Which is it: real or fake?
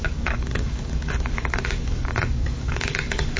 fake